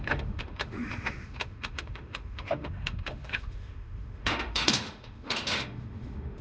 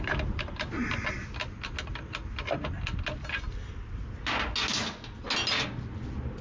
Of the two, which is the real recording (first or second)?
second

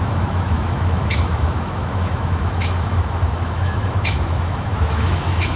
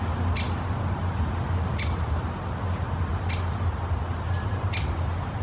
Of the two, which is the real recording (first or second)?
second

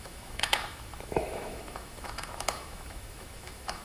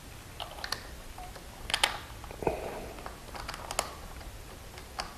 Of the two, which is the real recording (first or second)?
second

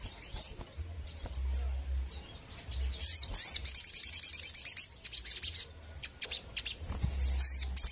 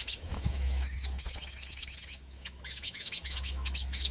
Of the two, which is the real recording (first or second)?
first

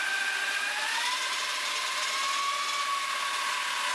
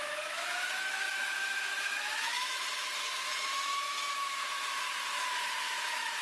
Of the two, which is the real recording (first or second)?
first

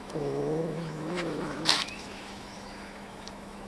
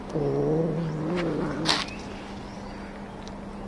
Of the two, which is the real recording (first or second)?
second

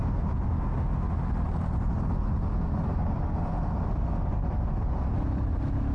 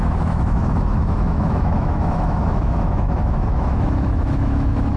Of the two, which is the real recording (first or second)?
first